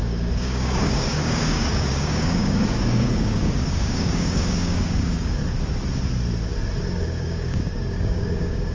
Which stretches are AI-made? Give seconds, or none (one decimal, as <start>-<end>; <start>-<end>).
0.0-5.4; 7.2-8.7